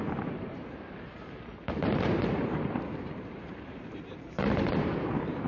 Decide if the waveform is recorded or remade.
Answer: remade